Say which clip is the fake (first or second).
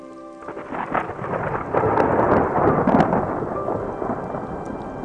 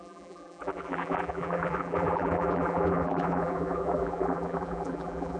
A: second